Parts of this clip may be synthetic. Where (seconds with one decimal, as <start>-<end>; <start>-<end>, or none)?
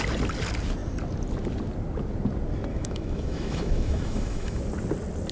2.7-4.6